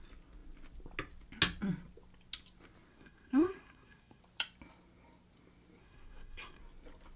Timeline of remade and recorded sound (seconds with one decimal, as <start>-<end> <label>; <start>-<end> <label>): 0.0-2.9 recorded; 2.9-4.2 remade; 4.2-5.8 recorded; 5.8-6.6 remade; 6.6-7.2 recorded